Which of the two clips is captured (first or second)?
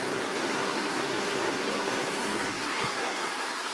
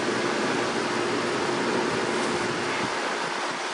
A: second